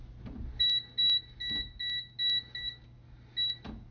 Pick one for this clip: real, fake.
real